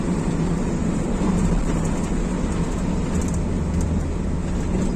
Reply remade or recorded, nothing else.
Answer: recorded